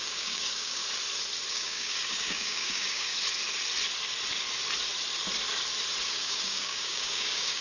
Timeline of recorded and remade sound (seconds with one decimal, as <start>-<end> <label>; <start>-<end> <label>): 0.0-0.8 remade; 0.8-1.5 recorded; 1.5-3.1 remade; 3.1-6.1 recorded; 6.1-7.6 remade